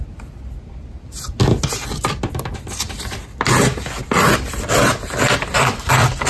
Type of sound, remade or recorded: recorded